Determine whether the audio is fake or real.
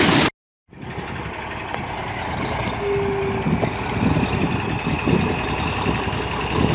real